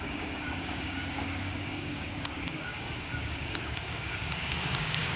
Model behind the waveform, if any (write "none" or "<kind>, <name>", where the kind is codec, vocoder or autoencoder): codec, DAC